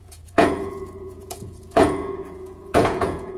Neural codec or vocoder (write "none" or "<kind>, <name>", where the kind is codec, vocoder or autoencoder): vocoder, Vocos